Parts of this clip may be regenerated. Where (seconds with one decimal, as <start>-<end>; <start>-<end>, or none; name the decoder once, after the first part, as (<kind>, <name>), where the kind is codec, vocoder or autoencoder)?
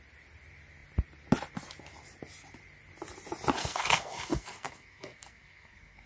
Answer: 3.6-6.1 (codec, SNAC)